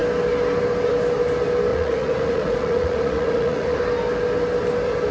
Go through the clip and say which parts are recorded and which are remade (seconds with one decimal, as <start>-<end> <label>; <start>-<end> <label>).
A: 0.0-1.7 recorded; 1.7-3.8 remade; 3.8-5.1 recorded

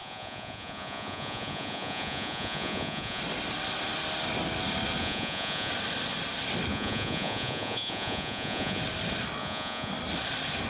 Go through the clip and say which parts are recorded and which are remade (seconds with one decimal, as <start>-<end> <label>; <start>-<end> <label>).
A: 0.0-3.2 remade; 3.2-5.0 recorded; 5.0-5.7 remade; 5.7-6.7 recorded; 6.7-8.8 remade; 8.8-9.4 recorded; 9.4-9.9 remade; 9.9-10.7 recorded

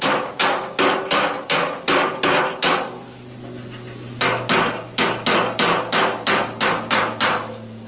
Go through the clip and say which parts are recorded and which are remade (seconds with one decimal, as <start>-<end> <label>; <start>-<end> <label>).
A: 0.0-7.9 recorded

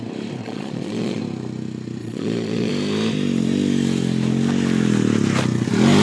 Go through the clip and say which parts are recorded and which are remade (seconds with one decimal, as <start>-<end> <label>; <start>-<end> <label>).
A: 0.0-0.4 recorded; 0.4-1.2 remade; 1.2-2.0 recorded; 2.0-2.7 remade; 2.7-6.0 recorded